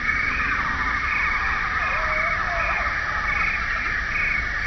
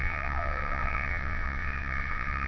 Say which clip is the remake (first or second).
second